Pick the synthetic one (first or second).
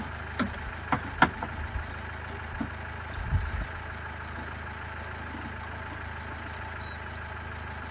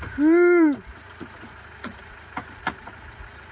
second